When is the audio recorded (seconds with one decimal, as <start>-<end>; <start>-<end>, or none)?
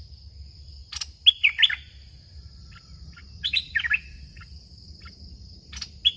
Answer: 0.0-6.2